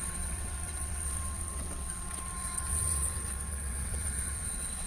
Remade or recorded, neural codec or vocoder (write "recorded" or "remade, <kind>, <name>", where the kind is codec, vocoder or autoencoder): remade, vocoder, WaveNeXt